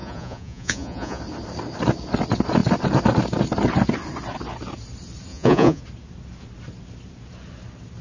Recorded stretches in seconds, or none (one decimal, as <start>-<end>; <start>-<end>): 1.2-5.3; 5.8-8.0